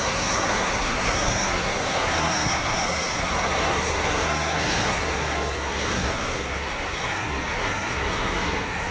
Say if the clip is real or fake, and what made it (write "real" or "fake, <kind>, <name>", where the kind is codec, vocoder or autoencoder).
fake, codec, SNAC